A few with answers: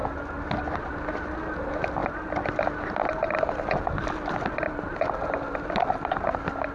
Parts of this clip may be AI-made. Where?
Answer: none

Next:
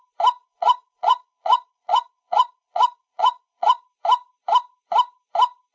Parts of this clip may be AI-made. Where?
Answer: 0.4-3.8 (vocoder, Vocos)

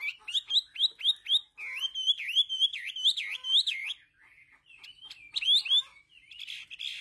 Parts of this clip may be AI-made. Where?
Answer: none

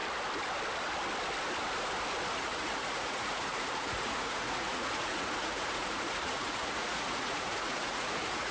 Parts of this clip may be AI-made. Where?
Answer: 2.4-8.5 (vocoder, Vocos)

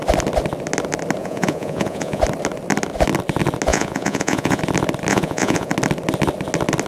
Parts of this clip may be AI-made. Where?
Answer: 1.2-2.2 (vocoder, Vocos); 3.7-4.6; 5.1-5.7

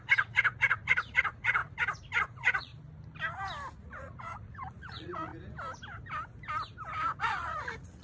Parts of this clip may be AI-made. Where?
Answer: 0.0-1.6 (vocoder, Vocos); 2.2-2.7; 3.8-5.3; 7.2-8.0

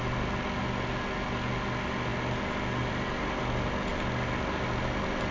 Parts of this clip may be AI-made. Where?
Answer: none

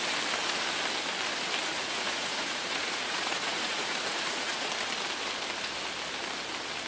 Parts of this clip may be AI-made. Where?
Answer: 1.7-4.7 (vocoder, Vocos)